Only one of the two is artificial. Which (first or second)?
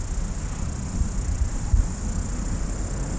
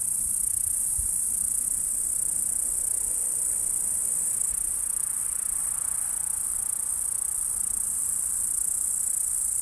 second